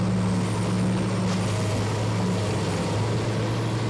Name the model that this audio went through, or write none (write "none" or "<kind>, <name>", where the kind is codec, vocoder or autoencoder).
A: none